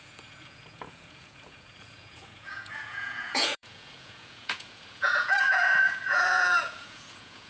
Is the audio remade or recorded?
remade